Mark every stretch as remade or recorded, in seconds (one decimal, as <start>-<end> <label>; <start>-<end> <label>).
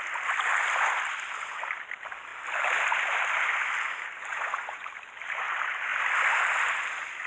0.0-4.3 recorded; 4.3-4.9 remade; 4.9-7.3 recorded